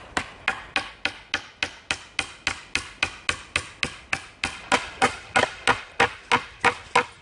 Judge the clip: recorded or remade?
recorded